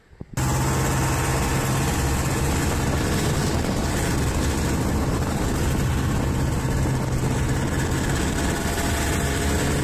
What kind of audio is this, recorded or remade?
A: recorded